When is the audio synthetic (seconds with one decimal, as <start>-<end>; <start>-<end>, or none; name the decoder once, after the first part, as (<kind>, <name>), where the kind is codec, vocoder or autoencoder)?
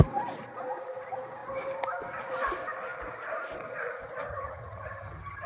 4.3-5.5 (vocoder, HiFi-GAN)